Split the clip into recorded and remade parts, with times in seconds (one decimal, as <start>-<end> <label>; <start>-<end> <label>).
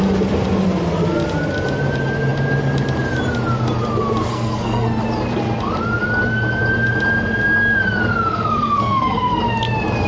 0.0-4.3 recorded; 4.3-5.0 remade; 5.0-8.3 recorded; 8.3-9.4 remade; 9.4-10.1 recorded